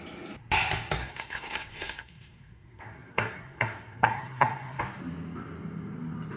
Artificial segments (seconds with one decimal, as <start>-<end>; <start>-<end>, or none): 1.0-4.8